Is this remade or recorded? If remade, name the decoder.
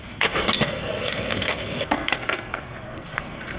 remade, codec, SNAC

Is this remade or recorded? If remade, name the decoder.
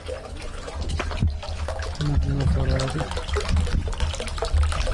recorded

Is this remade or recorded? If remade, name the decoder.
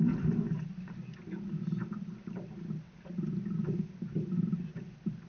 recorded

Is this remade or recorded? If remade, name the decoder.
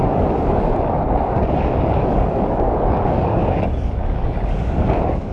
remade, codec, DAC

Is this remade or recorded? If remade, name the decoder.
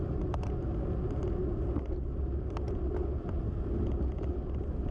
recorded